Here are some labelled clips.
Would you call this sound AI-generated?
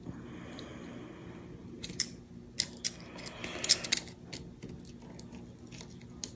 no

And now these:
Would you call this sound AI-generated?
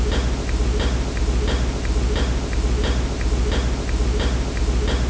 no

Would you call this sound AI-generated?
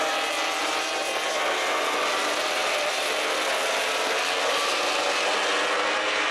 no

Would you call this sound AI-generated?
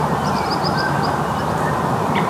yes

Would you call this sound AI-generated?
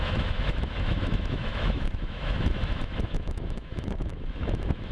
yes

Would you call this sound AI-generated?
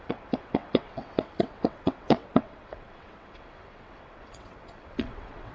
yes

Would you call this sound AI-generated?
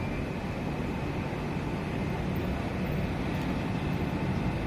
no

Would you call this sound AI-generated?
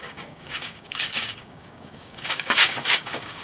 yes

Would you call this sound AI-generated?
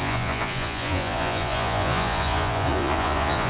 yes